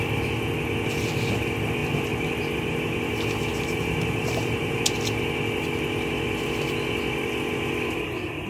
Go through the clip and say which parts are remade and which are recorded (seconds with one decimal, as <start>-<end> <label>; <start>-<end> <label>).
0.0-3.5 recorded; 3.5-4.8 remade; 4.8-8.5 recorded